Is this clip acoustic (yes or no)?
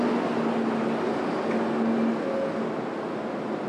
yes